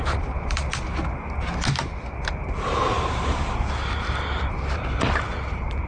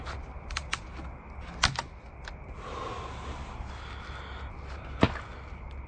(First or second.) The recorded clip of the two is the second